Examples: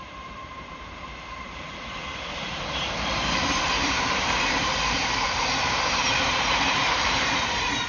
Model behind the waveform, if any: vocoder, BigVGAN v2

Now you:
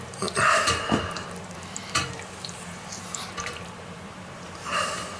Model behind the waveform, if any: vocoder, BigVGAN v2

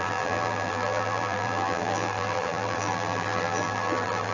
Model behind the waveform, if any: vocoder, BigVGAN v2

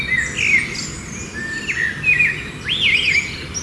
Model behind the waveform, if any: none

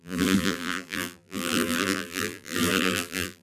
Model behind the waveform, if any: vocoder, BigVGAN v2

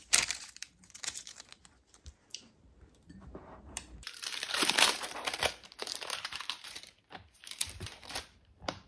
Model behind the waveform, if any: vocoder, BigVGAN v2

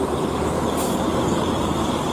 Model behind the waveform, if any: vocoder, BigVGAN v2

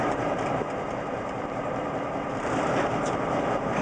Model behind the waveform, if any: vocoder, BigVGAN v2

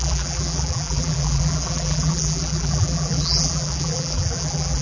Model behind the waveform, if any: vocoder, BigVGAN v2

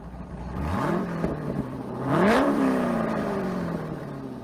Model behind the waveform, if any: vocoder, BigVGAN v2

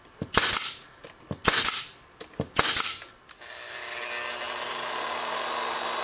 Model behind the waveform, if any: none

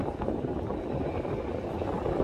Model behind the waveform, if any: none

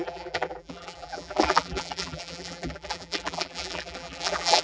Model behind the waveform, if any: vocoder, BigVGAN v2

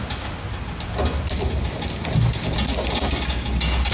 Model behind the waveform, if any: none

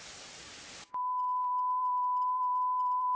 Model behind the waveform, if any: vocoder, BigVGAN v2